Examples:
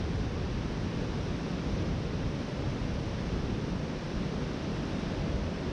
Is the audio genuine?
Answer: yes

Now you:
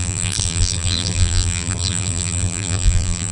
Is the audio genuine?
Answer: no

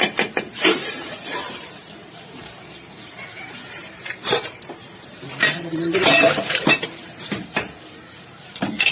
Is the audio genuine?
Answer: no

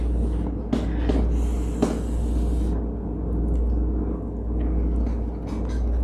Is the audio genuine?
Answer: yes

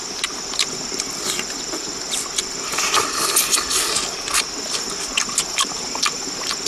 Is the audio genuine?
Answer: yes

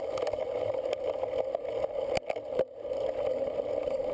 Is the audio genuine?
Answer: yes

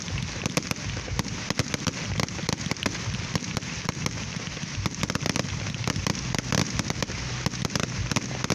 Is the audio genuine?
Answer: yes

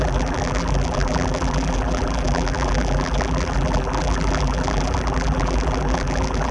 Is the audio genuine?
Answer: no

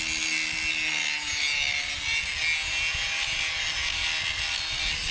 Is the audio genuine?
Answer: yes